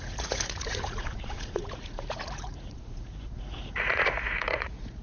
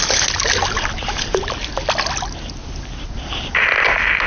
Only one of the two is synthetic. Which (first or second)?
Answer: first